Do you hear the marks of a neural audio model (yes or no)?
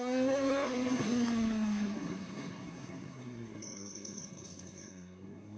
yes